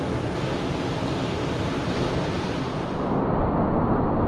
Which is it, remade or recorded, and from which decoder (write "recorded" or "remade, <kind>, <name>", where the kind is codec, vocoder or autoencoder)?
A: recorded